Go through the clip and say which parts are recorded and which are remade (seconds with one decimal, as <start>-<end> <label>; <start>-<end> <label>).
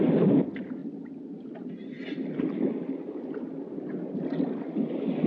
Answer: 0.0-0.8 recorded; 0.8-1.6 remade; 1.6-5.3 recorded